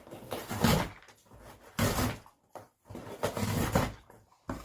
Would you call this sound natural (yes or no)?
yes